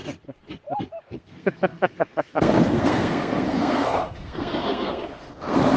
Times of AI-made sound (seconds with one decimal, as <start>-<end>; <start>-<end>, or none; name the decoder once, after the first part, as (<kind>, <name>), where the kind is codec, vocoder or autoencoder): 1.0-5.8 (codec, SNAC)